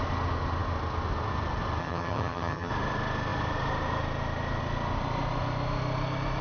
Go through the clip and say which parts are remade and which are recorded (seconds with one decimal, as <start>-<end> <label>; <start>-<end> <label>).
0.0-1.8 recorded; 1.8-2.7 remade; 2.7-6.4 recorded